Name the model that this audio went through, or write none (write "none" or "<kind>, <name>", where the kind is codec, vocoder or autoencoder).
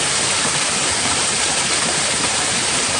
vocoder, BigVGAN v2